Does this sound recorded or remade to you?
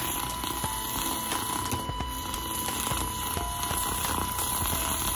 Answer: recorded